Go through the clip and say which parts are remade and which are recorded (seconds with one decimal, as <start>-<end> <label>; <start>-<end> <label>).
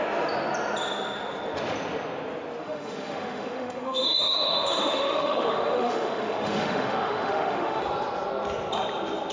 0.0-2.6 recorded; 2.6-7.8 remade; 7.8-9.3 recorded